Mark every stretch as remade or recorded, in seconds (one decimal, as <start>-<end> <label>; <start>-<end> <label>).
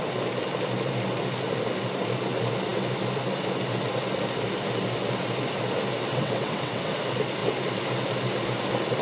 0.0-6.1 recorded; 6.1-6.9 remade; 6.9-9.0 recorded